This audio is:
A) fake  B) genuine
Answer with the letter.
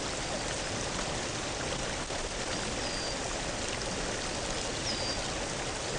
B